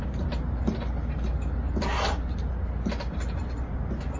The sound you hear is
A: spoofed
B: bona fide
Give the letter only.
B